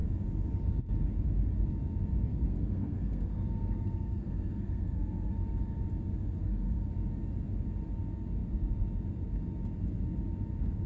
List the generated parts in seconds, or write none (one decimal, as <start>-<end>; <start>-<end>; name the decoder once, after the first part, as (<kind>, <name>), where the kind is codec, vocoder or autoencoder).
2.3-5.3 (codec, SNAC); 6.4-6.9